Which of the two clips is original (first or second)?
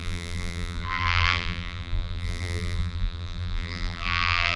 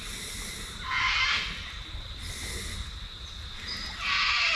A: second